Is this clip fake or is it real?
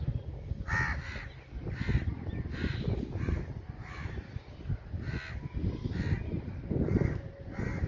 real